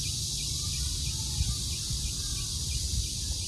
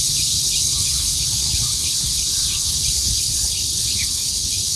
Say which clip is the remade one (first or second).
second